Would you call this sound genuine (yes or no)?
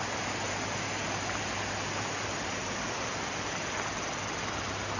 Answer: yes